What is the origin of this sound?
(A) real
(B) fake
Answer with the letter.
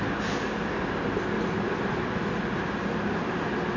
A